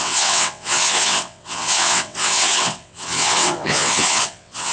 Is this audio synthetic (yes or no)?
yes